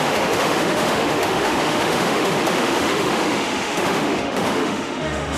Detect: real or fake fake